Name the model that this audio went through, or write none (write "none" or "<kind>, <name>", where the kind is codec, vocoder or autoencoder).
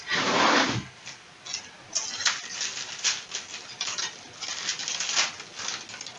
none